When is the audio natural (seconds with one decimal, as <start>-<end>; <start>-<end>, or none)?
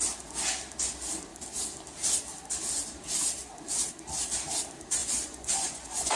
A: 0.0-5.0